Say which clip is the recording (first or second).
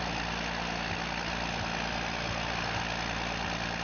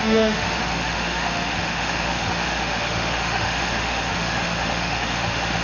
first